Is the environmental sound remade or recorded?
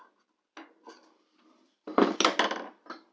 recorded